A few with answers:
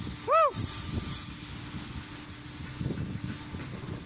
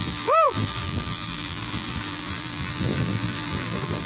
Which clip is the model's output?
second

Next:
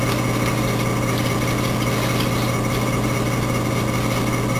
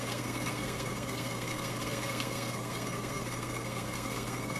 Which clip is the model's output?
second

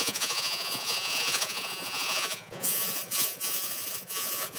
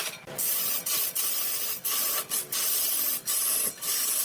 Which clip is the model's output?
first